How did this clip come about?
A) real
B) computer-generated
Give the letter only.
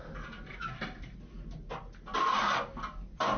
A